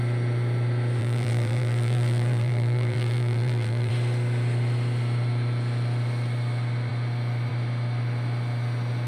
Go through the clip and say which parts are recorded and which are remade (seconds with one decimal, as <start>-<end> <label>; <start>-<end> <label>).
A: 0.0-1.0 recorded; 1.0-3.9 remade; 3.9-9.1 recorded